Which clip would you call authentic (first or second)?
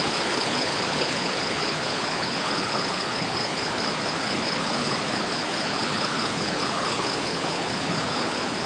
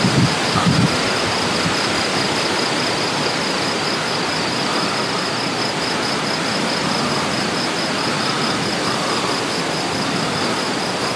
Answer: second